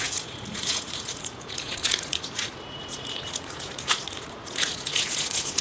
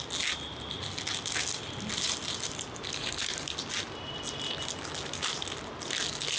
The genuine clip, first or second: second